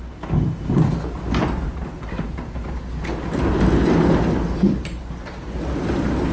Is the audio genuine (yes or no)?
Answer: yes